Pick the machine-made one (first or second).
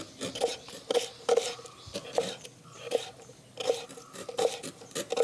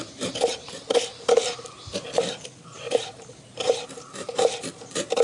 second